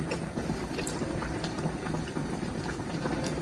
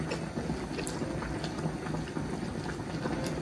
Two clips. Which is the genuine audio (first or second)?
second